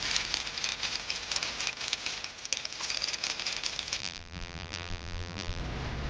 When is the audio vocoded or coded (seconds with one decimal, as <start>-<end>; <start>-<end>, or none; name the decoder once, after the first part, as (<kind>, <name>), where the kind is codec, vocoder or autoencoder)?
4.0-5.6 (vocoder, BigVGAN v2)